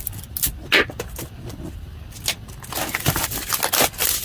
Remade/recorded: recorded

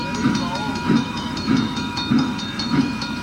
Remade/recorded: remade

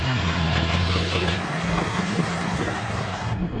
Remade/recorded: remade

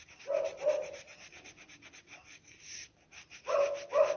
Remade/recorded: recorded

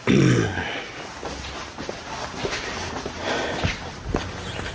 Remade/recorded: recorded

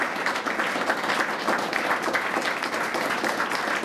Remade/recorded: recorded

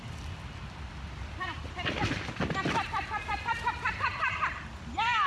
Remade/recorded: recorded